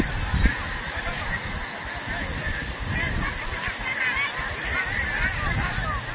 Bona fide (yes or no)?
yes